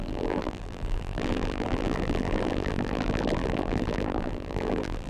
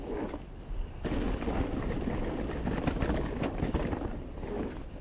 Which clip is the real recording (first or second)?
second